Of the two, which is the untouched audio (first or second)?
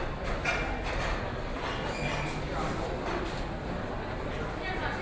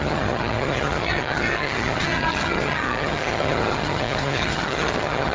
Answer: first